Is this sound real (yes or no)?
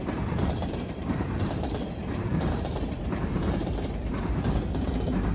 no